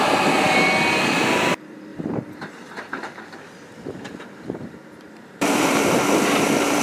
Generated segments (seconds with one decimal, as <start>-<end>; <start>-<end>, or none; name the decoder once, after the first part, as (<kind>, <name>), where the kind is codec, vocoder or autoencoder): 1.9-6.0 (vocoder, BigVGAN v2)